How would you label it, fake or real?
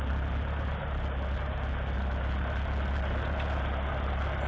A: real